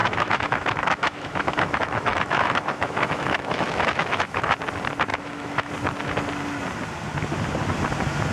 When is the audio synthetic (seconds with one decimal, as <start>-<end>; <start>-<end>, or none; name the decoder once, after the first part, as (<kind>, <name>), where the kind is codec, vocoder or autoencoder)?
0.0-4.5 (autoencoder, DAC-VAE); 5.1-5.7

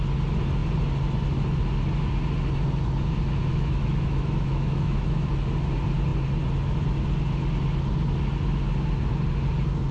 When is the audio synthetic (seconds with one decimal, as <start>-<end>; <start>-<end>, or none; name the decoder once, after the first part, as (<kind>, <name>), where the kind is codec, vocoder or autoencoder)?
3.5-5.3 (autoencoder, DAC-VAE)

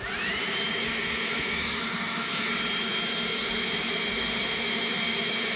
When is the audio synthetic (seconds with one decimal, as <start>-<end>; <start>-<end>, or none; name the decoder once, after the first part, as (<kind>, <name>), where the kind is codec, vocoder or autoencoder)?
0.7-2.5 (autoencoder, DAC-VAE); 3.3-5.6

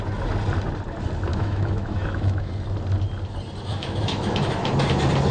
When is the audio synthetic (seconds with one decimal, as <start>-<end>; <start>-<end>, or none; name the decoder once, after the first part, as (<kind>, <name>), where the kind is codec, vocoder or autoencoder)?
1.3-2.5 (autoencoder, DAC-VAE); 3.7-4.7

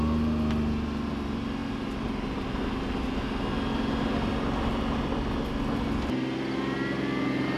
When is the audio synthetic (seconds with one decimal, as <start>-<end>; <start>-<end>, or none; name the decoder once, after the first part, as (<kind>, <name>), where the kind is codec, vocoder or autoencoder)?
none

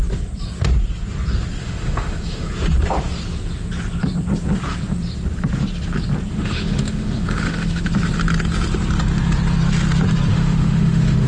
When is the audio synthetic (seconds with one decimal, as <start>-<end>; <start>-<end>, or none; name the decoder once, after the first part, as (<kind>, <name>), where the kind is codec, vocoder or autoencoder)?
1.6-2.5 (autoencoder, DAC-VAE); 6.3-7.8; 10.3-11.3

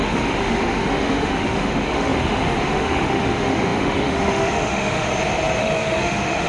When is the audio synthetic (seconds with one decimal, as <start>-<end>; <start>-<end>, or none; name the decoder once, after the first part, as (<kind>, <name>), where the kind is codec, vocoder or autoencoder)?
0.0-5.1 (autoencoder, DAC-VAE); 5.6-6.5

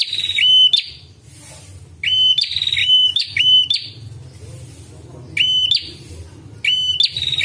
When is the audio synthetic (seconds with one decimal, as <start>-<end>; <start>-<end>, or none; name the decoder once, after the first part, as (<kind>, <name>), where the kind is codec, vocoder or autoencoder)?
2.8-3.5 (autoencoder, DAC-VAE)